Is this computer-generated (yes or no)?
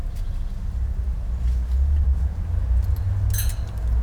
no